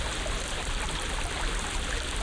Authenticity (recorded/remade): recorded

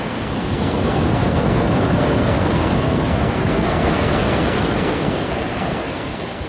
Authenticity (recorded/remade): remade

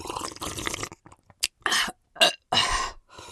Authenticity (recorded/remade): recorded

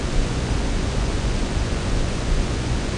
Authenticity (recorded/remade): remade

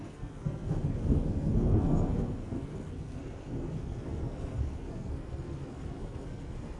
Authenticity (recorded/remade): remade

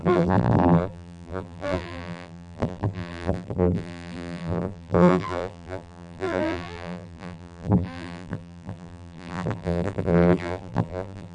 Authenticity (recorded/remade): remade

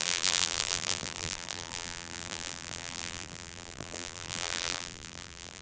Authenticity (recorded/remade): remade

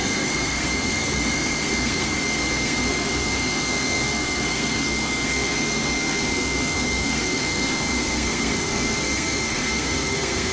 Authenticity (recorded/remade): remade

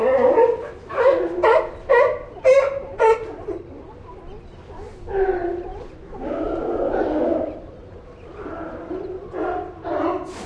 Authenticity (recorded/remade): recorded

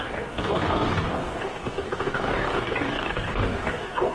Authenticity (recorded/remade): remade